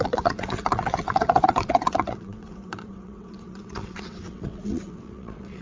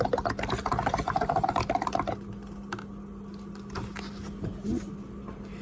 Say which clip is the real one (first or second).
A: second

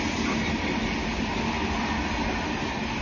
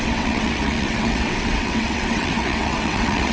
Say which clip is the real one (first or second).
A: first